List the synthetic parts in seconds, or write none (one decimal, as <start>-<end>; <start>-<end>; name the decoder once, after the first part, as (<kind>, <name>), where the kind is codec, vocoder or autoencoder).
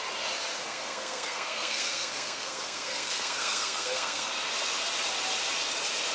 0.6-4.3 (codec, SNAC)